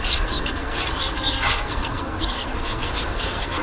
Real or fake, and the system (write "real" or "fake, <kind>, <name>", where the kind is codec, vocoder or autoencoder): fake, codec, SNAC